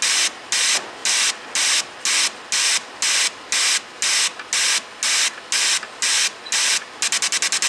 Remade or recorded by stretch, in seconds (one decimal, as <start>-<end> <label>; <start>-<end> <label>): 0.0-7.7 recorded